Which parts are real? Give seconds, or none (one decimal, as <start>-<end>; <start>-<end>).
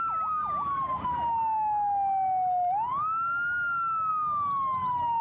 0.0-5.2